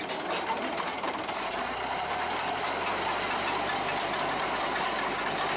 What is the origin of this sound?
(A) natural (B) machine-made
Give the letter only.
A